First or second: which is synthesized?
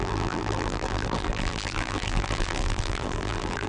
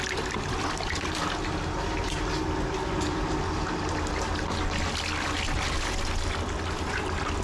first